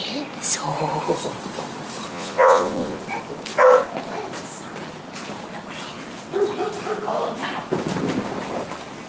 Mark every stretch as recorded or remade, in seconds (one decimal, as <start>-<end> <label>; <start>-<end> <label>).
0.0-2.1 recorded; 2.1-3.0 remade; 3.0-9.1 recorded